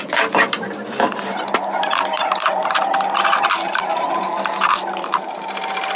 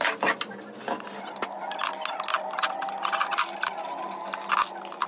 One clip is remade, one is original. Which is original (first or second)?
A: second